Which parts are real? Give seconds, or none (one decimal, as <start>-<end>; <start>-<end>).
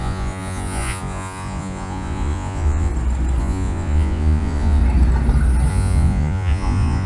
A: 2.9-3.4; 4.8-5.7